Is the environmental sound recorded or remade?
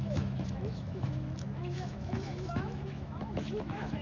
remade